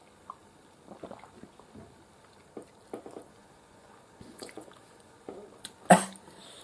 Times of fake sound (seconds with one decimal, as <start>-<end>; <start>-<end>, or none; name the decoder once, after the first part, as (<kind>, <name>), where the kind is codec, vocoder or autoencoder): 3.3-5.3 (vocoder, Vocos)